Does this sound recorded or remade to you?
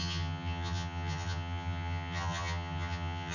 remade